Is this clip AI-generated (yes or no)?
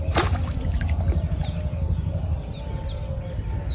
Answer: no